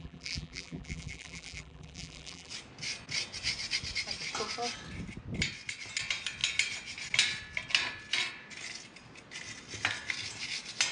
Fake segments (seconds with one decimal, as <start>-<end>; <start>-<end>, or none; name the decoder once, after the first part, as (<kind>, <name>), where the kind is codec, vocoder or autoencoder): 0.0-2.5 (vocoder, BigVGAN v2)